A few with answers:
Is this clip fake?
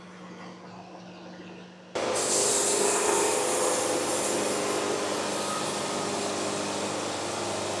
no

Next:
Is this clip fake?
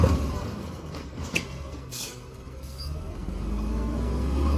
yes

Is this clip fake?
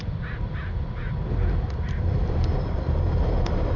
no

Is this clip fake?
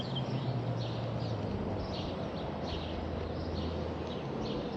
no